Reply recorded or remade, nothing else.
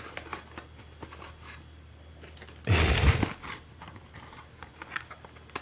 recorded